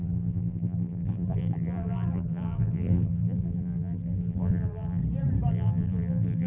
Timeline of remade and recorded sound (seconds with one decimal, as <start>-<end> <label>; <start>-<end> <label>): 0.0-5.0 remade; 5.0-5.5 recorded; 5.5-6.5 remade